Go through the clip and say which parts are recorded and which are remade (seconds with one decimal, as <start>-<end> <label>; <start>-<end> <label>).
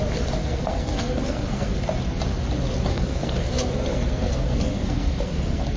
0.0-0.4 recorded; 0.4-1.7 remade; 1.7-2.9 recorded; 2.9-5.8 remade